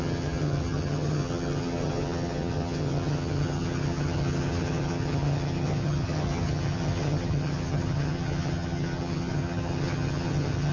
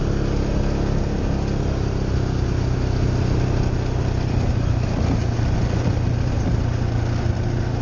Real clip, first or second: second